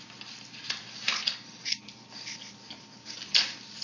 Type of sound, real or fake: real